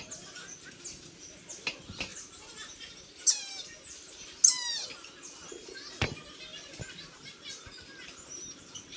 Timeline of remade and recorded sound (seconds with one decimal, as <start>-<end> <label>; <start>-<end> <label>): 0.0-2.1 recorded; 2.1-3.8 remade; 3.8-9.0 recorded